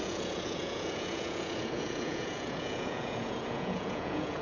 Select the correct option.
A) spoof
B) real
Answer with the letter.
A